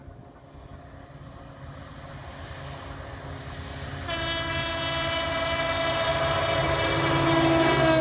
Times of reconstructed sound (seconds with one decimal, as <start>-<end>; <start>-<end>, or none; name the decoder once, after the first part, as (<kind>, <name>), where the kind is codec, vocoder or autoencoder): none